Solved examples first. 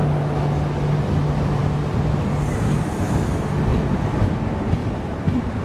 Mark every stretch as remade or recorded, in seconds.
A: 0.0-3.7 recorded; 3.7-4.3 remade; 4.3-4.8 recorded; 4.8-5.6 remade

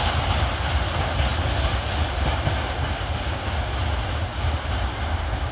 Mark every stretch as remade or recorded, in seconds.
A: 0.0-5.5 recorded

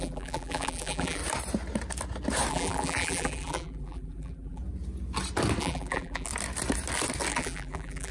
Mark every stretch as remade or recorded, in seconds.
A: 0.0-1.2 remade; 1.2-2.5 recorded; 2.5-4.6 remade; 4.6-5.6 recorded; 5.6-6.3 remade; 6.3-7.3 recorded; 7.3-8.1 remade

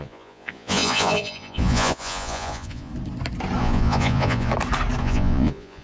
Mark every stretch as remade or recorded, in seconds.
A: 0.0-2.9 remade; 2.9-3.6 recorded; 3.6-4.5 remade; 4.5-5.0 recorded; 5.0-5.8 remade

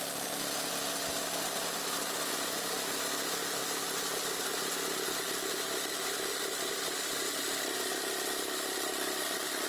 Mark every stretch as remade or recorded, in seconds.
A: 0.0-9.7 recorded

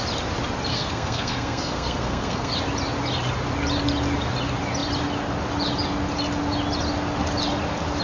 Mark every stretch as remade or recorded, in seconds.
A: 0.0-0.7 recorded; 0.7-2.5 remade; 2.5-8.0 recorded

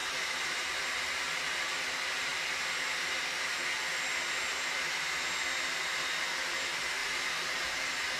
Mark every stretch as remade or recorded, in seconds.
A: 0.0-1.9 remade; 1.9-7.0 recorded; 7.0-8.2 remade

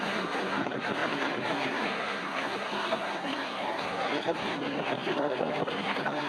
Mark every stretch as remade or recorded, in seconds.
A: 0.0-6.3 remade